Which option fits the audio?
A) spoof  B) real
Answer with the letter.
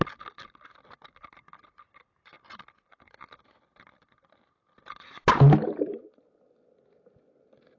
B